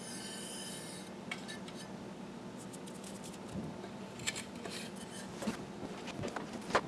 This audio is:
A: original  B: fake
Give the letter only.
A